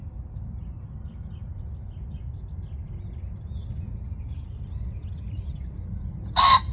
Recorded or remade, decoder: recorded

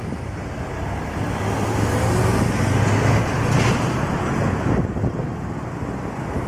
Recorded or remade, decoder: recorded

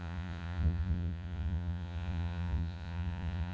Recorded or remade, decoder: remade, vocoder, Vocos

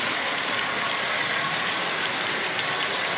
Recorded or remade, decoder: recorded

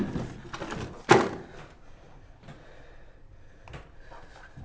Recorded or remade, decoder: recorded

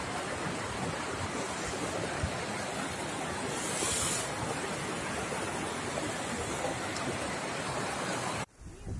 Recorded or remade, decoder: recorded